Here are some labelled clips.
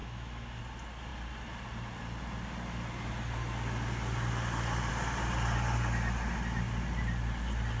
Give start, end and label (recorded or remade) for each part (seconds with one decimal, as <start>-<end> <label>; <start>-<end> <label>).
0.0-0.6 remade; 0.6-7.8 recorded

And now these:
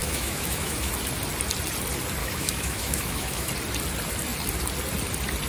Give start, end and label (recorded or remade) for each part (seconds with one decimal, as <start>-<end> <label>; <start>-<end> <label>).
0.0-0.9 remade; 0.9-2.2 recorded; 2.2-3.5 remade; 3.5-5.5 recorded

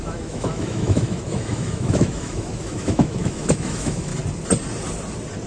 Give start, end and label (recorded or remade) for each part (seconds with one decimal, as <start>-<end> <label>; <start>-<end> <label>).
0.0-4.1 remade; 4.1-5.5 recorded

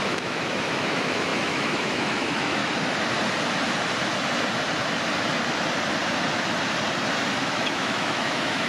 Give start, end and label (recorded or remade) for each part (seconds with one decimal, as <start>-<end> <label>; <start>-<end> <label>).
0.0-2.6 remade; 2.6-7.4 recorded; 7.4-8.7 remade

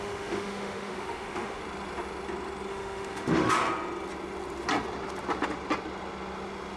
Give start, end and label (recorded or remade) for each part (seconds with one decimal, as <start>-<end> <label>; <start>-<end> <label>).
0.0-1.6 remade; 1.6-2.7 recorded; 2.7-3.6 remade; 3.6-6.8 recorded

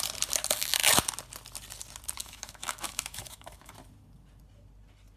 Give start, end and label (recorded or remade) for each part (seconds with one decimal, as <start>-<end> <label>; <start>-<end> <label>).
0.0-2.2 recorded; 2.2-3.7 remade; 3.7-5.2 recorded